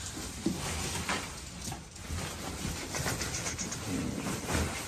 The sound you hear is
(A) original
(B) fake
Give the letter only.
A